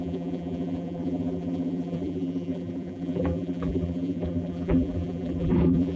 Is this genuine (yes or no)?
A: no